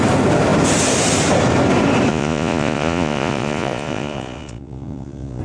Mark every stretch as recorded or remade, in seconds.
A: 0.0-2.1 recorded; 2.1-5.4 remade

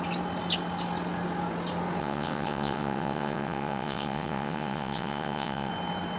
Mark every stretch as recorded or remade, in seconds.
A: 0.0-2.0 recorded; 2.0-5.7 remade; 5.7-6.2 recorded

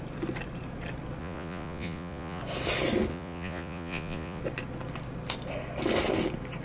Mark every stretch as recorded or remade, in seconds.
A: 0.0-1.2 recorded; 1.2-2.4 remade; 2.4-3.1 recorded; 3.1-4.4 remade; 4.4-6.6 recorded

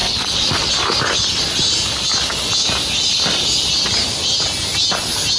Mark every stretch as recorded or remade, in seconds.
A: 0.0-0.7 remade; 0.7-5.4 recorded

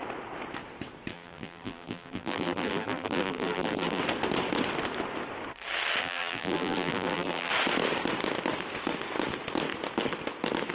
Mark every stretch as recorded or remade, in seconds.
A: 0.0-1.1 recorded; 1.1-4.0 remade; 4.0-6.0 recorded; 6.0-7.5 remade; 7.5-10.7 recorded